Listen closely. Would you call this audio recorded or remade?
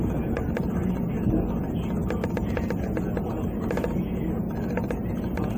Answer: recorded